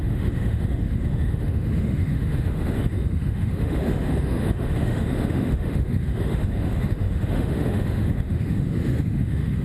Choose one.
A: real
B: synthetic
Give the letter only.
B